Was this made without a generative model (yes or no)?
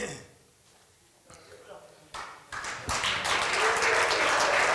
yes